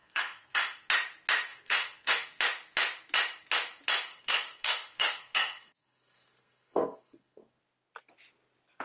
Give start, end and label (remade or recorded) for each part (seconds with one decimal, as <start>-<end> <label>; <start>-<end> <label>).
0.0-0.9 remade; 0.9-1.5 recorded; 1.5-2.4 remade; 2.4-4.1 recorded; 4.1-7.6 remade; 7.6-8.8 recorded